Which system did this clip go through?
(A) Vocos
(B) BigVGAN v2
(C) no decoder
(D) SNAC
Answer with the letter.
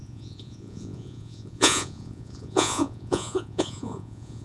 A